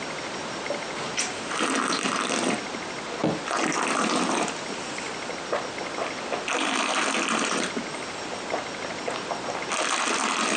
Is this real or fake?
fake